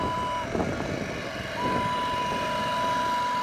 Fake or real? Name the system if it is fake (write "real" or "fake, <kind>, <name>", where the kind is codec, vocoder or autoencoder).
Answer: real